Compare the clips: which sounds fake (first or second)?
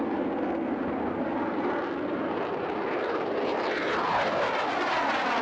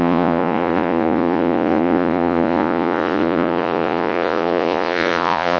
second